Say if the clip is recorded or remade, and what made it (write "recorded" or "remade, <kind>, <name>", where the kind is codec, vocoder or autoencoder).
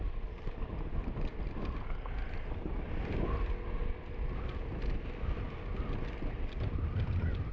recorded